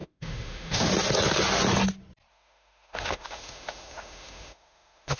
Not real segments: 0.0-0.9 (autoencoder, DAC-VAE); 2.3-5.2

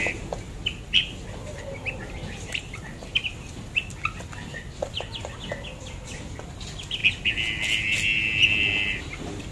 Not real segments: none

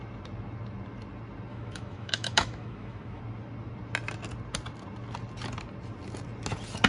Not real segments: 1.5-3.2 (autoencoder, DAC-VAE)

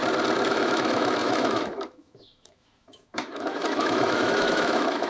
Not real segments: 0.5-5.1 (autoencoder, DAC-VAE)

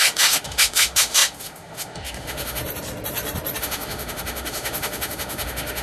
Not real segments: 0.0-2.6 (autoencoder, DAC-VAE); 3.6-5.8

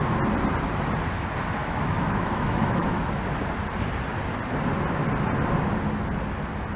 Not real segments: 1.6-3.0 (autoencoder, DAC-VAE)